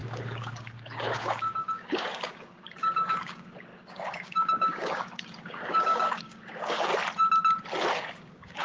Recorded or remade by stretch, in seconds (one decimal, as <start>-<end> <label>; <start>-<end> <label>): 0.0-6.9 remade; 6.9-7.9 recorded; 7.9-8.6 remade